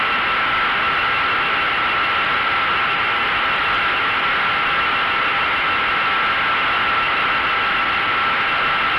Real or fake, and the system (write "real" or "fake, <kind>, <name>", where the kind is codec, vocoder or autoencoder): real